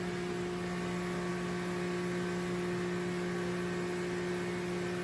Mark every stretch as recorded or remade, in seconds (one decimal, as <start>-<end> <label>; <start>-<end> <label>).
0.0-5.0 recorded